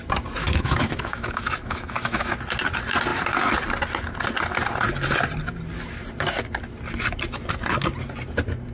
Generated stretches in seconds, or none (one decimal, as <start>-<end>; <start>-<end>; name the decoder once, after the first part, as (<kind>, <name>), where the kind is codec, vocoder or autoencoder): 0.4-2.4 (autoencoder, DAC-VAE)